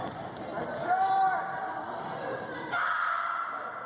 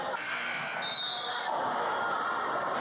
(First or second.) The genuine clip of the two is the second